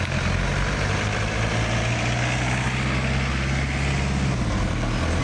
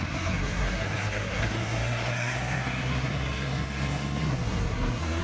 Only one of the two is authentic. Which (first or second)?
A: first